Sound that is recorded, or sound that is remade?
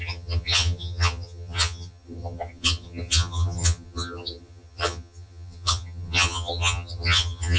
remade